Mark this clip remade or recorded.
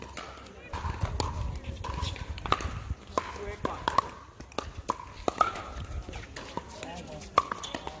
recorded